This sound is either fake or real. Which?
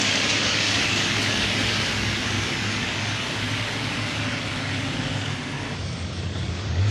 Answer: fake